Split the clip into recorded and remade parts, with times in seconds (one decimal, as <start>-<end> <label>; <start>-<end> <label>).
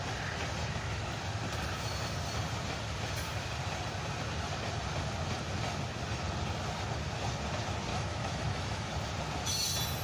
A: 0.0-7.9 recorded; 7.9-8.9 remade; 8.9-10.0 recorded